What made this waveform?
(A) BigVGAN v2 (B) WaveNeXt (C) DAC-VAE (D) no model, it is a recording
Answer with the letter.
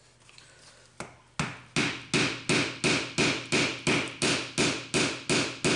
D